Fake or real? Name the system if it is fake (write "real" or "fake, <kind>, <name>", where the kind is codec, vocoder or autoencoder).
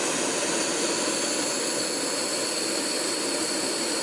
real